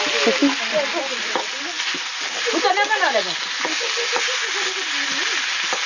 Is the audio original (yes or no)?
yes